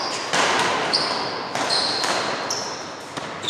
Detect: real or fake real